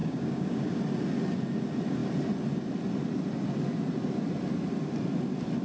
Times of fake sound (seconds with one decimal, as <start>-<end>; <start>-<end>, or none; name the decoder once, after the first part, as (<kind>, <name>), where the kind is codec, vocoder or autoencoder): 0.0-0.8 (codec, DAC)